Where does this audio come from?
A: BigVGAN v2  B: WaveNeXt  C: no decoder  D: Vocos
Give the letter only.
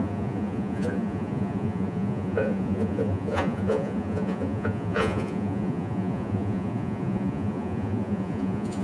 D